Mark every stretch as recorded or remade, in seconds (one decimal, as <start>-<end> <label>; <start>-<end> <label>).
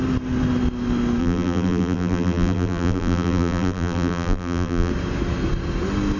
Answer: 0.0-1.2 recorded; 1.2-4.9 remade; 4.9-6.2 recorded